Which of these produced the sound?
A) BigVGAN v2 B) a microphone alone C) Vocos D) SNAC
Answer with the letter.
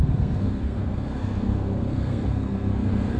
D